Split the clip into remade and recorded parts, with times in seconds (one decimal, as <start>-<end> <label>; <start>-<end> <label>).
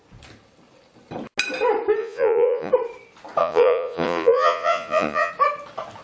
0.0-2.0 recorded; 2.0-2.7 remade; 2.7-3.4 recorded; 3.4-5.3 remade; 5.3-6.0 recorded